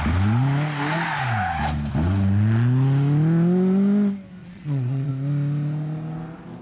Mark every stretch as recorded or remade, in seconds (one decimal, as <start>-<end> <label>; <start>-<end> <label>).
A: 0.0-4.4 recorded; 4.4-5.1 remade; 5.1-6.6 recorded